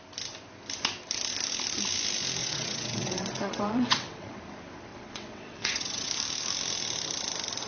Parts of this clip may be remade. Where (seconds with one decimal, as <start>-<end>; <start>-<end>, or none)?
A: 2.4-4.4; 4.9-6.1

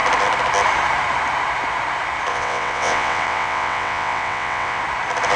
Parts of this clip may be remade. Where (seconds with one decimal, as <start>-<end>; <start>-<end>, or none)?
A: 2.3-4.8

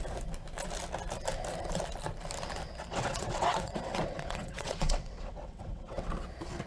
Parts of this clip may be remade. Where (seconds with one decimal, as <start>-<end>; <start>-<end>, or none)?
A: 2.9-6.1

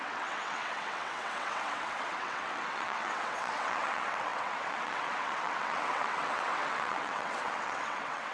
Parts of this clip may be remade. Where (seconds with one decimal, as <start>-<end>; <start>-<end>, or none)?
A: 0.0-8.3

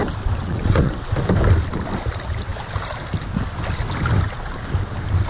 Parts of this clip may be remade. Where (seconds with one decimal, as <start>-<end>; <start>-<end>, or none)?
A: 0.4-0.9

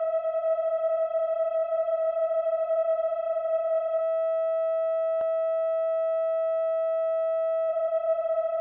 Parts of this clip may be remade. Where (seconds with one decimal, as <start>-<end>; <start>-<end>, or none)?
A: 0.0-4.0; 7.7-8.6

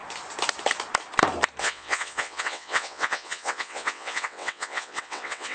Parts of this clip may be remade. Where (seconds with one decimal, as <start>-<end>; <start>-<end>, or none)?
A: 1.6-5.5

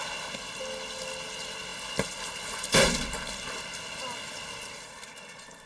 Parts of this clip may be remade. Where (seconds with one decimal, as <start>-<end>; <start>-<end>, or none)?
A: none